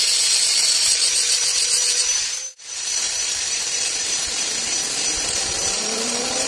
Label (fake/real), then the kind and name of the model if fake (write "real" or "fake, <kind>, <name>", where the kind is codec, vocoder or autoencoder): fake, vocoder, BigVGAN v2